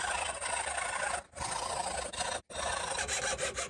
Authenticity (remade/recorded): recorded